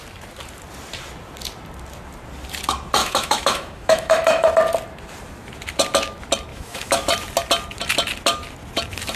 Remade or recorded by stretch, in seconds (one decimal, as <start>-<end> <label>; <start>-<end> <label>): 0.0-3.0 recorded; 3.0-4.5 remade; 4.5-6.5 recorded; 6.5-7.1 remade; 7.1-9.2 recorded